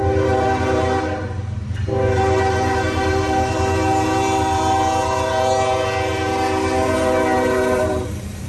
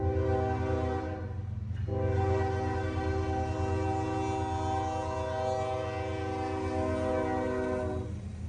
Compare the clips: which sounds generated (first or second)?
first